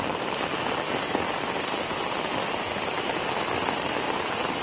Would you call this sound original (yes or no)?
no